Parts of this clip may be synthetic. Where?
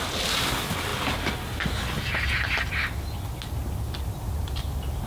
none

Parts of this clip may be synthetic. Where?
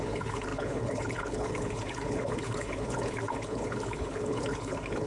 0.0-5.1 (codec, HILCodec)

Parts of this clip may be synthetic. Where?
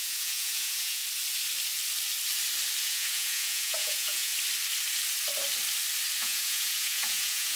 0.0-1.0 (vocoder, Vocos); 2.8-4.3; 6.2-7.6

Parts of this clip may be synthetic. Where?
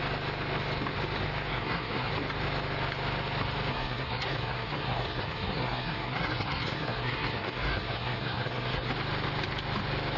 1.5-2.1 (codec, SNAC); 3.7-8.9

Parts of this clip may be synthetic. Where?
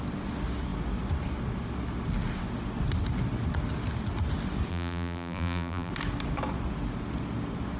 4.7-5.9 (vocoder, BigVGAN v2)